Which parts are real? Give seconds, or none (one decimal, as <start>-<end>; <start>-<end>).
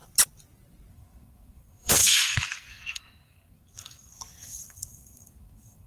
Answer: 0.0-0.9